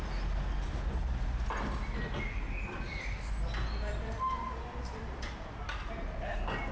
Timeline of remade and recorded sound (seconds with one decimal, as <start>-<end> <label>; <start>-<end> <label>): 0.0-6.7 recorded